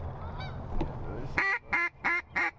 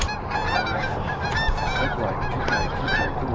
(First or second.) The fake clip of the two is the second